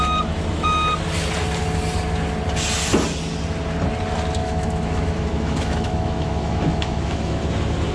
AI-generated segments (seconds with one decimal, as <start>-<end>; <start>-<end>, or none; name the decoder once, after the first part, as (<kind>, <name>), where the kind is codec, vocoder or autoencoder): 4.4-7.4 (autoencoder, DAC-VAE)